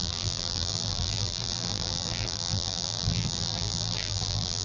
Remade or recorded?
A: remade